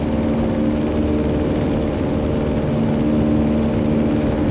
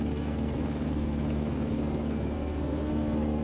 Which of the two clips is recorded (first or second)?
first